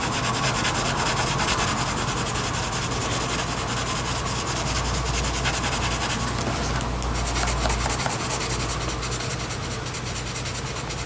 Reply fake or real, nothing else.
real